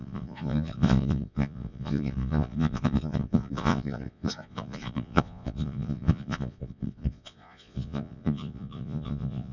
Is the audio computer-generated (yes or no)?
yes